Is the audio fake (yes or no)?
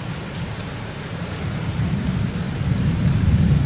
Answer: no